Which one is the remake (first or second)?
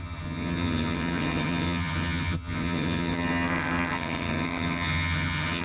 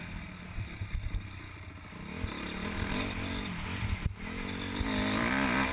first